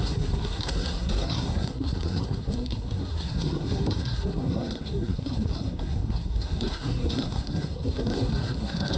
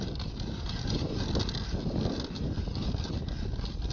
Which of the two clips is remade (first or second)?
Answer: first